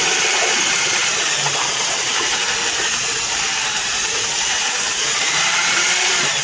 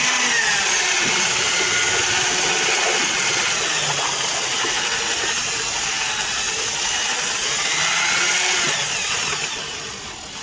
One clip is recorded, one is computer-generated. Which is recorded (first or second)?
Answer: second